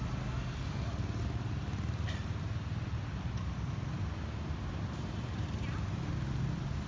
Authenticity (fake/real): real